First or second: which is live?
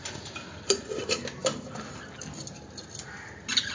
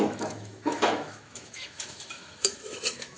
first